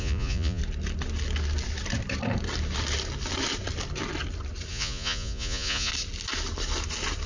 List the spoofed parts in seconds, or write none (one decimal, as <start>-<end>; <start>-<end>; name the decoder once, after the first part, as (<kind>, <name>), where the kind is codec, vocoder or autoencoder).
0.0-0.6 (vocoder, Vocos); 4.7-5.9